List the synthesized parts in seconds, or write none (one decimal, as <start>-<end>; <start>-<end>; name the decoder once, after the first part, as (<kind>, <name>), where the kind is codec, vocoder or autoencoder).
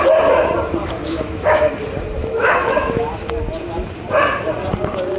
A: 0.8-1.7 (autoencoder, DAC-VAE); 2.2-3.3